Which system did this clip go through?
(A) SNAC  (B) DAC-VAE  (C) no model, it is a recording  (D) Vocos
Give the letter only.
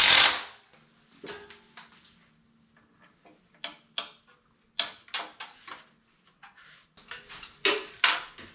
C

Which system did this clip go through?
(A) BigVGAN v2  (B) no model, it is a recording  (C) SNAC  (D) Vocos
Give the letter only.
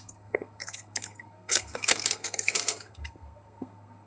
C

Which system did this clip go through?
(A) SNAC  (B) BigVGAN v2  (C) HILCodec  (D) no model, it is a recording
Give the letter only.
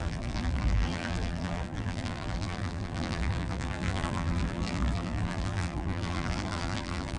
B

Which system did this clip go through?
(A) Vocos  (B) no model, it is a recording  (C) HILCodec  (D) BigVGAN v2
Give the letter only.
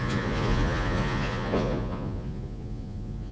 A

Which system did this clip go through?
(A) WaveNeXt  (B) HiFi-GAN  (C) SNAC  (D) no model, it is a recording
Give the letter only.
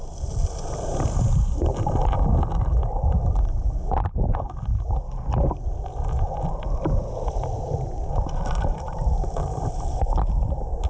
D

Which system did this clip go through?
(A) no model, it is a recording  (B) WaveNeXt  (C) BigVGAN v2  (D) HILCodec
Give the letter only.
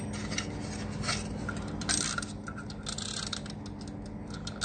A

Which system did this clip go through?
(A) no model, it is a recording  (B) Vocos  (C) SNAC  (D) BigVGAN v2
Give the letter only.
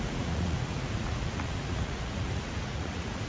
B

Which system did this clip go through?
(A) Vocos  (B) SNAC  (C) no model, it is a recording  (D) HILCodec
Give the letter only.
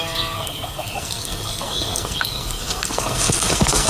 B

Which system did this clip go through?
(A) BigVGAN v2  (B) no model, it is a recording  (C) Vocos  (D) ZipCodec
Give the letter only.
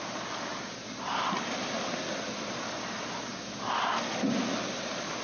B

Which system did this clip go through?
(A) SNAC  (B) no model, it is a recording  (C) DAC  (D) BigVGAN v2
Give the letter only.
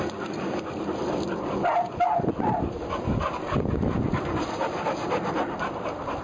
D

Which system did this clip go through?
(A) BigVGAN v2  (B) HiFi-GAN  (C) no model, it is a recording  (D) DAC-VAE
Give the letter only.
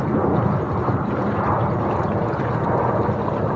A